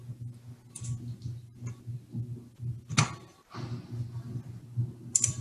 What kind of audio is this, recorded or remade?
recorded